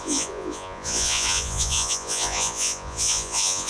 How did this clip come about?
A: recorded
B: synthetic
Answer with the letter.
B